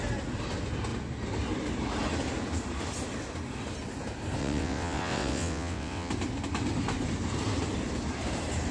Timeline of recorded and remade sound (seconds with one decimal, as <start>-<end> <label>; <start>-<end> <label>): 0.0-4.4 recorded; 4.4-6.1 remade; 6.1-8.7 recorded